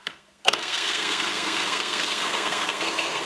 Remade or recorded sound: remade